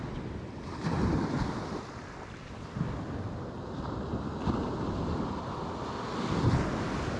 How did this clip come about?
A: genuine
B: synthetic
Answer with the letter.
A